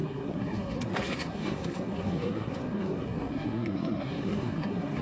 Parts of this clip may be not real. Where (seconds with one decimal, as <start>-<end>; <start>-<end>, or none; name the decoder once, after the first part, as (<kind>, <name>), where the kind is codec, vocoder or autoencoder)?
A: 0.0-5.0 (codec, SNAC)